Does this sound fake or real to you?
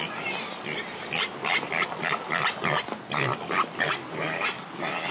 real